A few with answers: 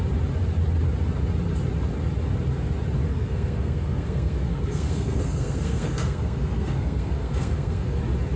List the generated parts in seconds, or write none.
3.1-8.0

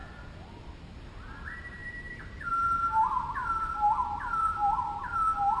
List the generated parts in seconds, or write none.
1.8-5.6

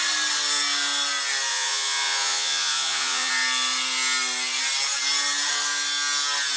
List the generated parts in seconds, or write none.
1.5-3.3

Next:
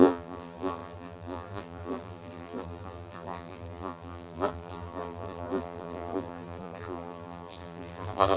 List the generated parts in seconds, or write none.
0.0-8.4